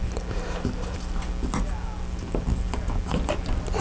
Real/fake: real